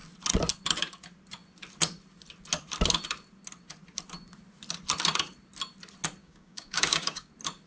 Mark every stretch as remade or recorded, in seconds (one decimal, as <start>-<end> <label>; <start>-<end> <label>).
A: 0.0-6.2 recorded; 6.2-7.3 remade; 7.3-7.7 recorded